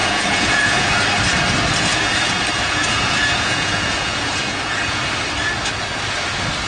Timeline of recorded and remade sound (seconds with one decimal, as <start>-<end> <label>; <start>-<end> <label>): 0.0-0.9 remade; 0.9-1.9 recorded; 1.9-5.0 remade; 5.0-6.7 recorded